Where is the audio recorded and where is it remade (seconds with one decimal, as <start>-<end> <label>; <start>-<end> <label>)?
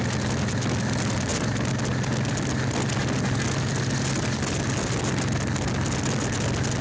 0.0-6.8 recorded